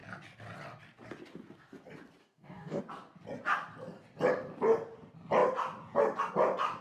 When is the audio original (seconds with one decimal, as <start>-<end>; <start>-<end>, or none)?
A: 0.0-2.2; 2.8-6.8